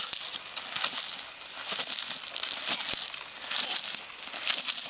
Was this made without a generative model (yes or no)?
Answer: yes